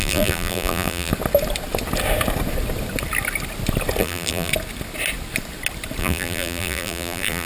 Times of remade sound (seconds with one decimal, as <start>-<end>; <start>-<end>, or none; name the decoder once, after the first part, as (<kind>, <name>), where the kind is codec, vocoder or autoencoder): 0.0-1.1 (vocoder, BigVGAN v2); 4.0-4.5; 6.0-7.5